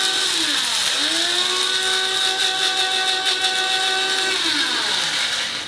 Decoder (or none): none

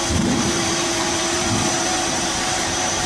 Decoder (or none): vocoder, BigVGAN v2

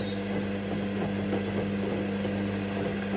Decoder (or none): none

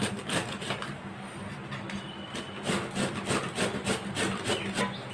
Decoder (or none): none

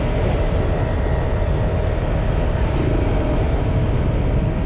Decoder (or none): none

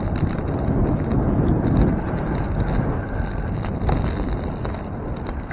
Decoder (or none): none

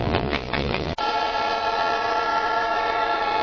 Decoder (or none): vocoder, Vocos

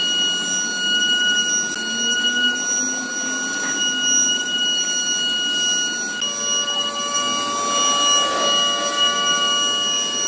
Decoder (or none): none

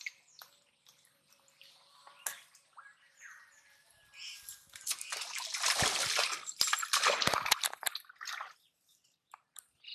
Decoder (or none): none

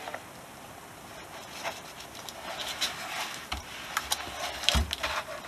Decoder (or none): none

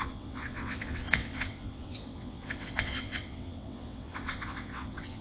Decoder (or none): vocoder, WaveNeXt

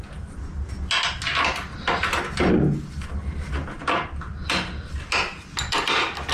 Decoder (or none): none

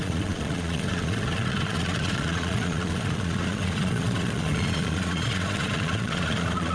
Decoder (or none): vocoder, Vocos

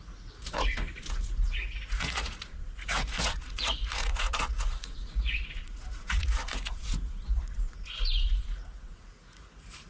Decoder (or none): vocoder, Vocos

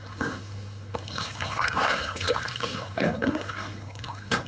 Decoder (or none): codec, SNAC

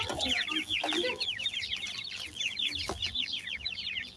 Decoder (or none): vocoder, BigVGAN v2